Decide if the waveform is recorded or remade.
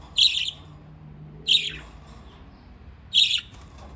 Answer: recorded